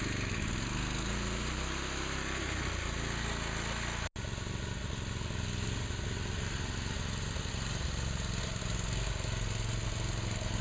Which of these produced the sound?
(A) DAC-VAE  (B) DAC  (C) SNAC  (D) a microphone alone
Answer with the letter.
D